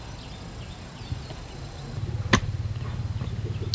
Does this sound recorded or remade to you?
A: recorded